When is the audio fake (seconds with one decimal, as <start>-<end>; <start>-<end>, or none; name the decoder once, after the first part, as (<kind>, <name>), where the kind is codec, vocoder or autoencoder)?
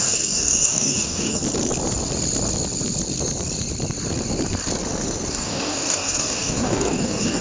0.0-1.4 (codec, DAC); 5.3-7.4